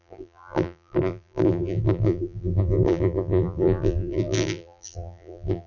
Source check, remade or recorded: remade